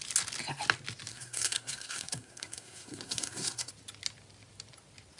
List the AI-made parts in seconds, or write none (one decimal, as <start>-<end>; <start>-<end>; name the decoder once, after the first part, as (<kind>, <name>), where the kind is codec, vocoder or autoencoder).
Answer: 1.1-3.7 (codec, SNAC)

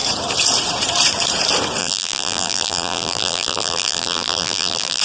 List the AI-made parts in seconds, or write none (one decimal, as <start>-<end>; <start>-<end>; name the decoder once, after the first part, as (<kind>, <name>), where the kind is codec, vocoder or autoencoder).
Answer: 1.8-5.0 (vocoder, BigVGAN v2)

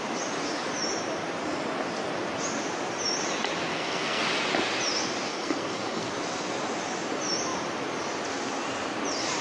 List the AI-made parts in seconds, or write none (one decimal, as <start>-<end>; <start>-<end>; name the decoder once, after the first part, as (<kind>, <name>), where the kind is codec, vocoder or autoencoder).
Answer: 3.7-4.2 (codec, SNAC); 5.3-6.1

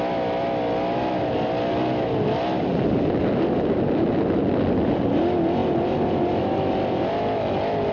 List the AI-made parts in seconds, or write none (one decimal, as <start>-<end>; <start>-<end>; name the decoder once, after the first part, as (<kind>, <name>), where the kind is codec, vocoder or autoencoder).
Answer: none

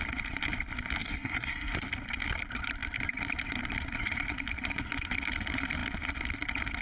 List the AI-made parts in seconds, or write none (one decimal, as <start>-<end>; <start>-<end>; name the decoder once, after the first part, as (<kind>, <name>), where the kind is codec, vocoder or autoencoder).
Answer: 1.0-1.7 (codec, SNAC)

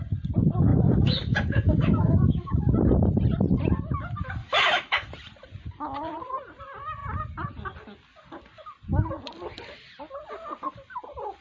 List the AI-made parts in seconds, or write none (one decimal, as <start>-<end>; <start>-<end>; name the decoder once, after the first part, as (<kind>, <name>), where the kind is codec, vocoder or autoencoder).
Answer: 0.7-2.7 (autoencoder, DAC-VAE); 4.4-5.1

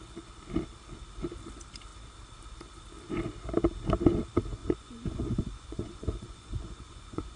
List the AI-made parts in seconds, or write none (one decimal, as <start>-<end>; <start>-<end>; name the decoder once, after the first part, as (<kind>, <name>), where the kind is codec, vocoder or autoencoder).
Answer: 4.6-7.4 (vocoder, Vocos)